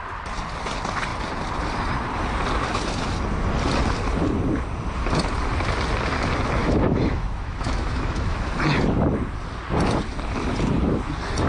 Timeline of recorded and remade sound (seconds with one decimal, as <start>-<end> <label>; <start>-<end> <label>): 0.0-6.6 recorded; 6.6-8.5 remade; 8.5-11.5 recorded